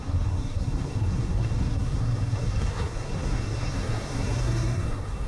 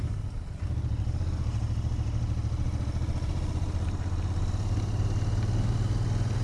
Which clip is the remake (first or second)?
first